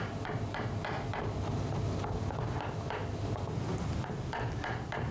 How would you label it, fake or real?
real